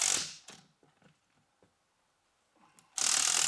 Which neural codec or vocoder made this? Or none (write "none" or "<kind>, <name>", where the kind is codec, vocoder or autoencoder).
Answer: none